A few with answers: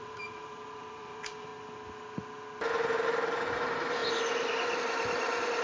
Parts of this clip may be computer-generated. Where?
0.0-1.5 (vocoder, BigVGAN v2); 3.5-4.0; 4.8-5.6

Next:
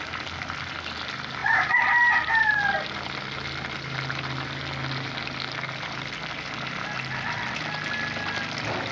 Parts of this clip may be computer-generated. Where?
1.4-2.5 (vocoder, BigVGAN v2)

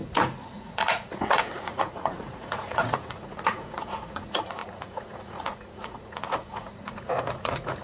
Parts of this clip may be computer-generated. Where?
0.0-7.8 (vocoder, Vocos)

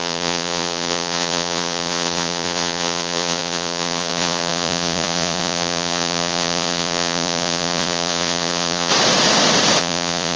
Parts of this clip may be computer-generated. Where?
0.0-8.9 (vocoder, Vocos); 9.8-10.4

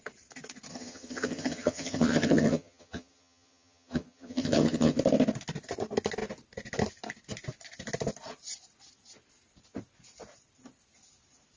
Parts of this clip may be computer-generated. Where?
0.7-5.0 (vocoder, HiFi-GAN)

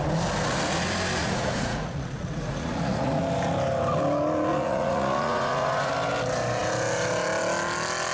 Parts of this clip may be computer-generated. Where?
1.2-3.2 (vocoder, Vocos); 4.5-5.9

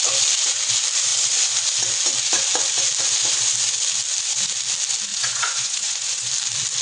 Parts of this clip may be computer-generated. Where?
5.1-6.3 (vocoder, Vocos)